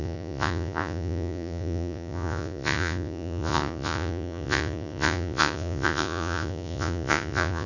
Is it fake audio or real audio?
fake